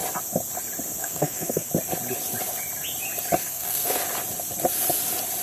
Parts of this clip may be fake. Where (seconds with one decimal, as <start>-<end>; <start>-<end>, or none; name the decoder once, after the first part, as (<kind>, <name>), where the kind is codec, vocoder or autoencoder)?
1.0-1.7 (codec, SNAC); 3.4-4.0